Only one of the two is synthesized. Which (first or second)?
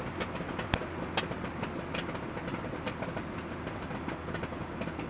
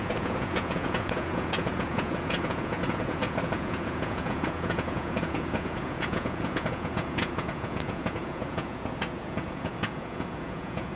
second